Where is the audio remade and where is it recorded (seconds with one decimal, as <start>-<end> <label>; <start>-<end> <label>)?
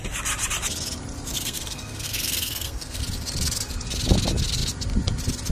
0.0-1.3 recorded; 1.3-3.0 remade; 3.0-5.5 recorded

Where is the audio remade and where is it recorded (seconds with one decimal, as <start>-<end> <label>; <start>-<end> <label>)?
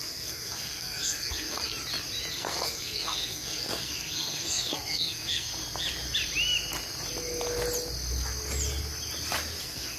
0.0-1.7 remade; 1.7-2.3 recorded; 2.3-5.5 remade; 5.5-9.6 recorded; 9.6-10.0 remade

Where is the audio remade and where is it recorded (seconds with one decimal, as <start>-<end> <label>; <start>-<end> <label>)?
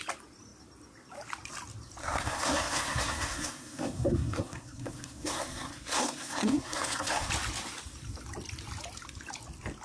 0.0-2.0 recorded; 2.0-7.3 remade; 7.3-9.8 recorded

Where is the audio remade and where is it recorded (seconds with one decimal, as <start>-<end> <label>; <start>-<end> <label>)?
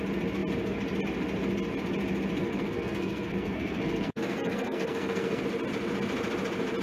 0.0-2.4 recorded; 2.4-5.4 remade; 5.4-6.8 recorded